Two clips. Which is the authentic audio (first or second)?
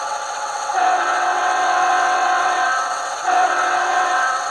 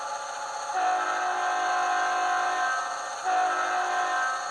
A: second